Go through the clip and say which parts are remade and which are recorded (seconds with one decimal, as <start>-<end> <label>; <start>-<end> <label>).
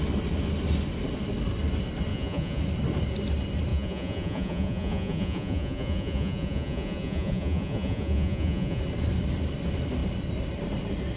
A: 0.0-2.1 recorded; 2.1-2.6 remade; 2.6-3.7 recorded; 3.7-8.8 remade; 8.8-11.2 recorded